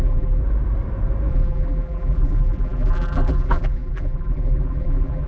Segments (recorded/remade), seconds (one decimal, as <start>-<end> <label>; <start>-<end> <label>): 0.0-0.4 remade; 0.4-1.3 recorded; 1.3-5.3 remade